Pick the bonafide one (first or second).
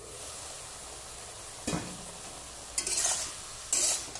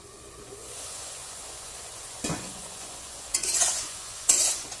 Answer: first